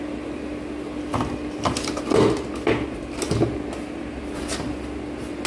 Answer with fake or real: real